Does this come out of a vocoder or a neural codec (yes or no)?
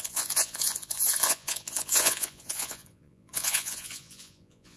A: yes